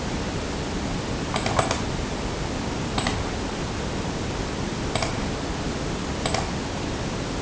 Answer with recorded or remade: recorded